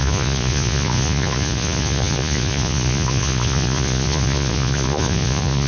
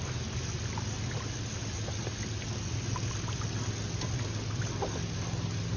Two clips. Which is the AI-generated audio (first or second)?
first